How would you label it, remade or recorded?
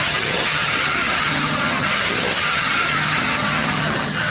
remade